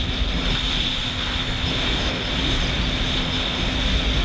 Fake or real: real